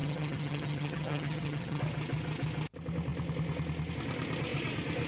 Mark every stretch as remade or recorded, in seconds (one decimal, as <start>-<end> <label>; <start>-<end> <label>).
0.0-1.8 remade; 1.8-5.1 recorded